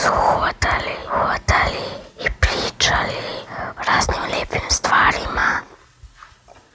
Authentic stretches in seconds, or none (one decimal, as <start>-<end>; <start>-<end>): 0.0-3.3; 4.6-6.7